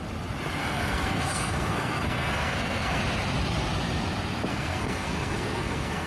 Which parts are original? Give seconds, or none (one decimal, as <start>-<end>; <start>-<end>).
0.0-0.6; 3.0-4.5